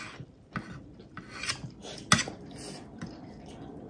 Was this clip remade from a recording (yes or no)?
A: no